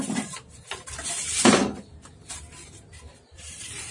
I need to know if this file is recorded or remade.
remade